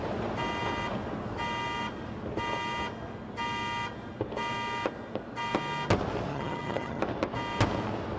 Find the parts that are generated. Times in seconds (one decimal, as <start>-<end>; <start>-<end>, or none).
6.3-7.0